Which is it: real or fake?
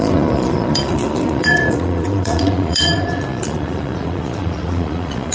fake